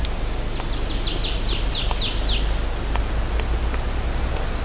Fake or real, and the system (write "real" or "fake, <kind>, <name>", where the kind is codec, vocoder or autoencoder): real